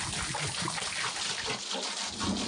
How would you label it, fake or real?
real